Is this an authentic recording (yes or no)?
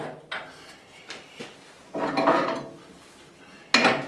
yes